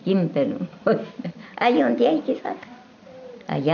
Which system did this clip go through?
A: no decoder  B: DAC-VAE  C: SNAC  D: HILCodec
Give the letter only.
A